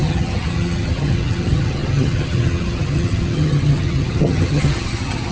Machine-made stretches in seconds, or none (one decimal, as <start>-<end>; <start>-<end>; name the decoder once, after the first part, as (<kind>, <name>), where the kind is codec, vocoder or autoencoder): 0.0-5.3 (vocoder, HiFi-GAN)